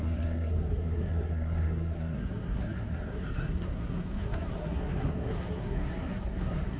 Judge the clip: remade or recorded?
remade